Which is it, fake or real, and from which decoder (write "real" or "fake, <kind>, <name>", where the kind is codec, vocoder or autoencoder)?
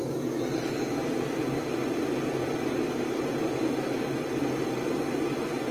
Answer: real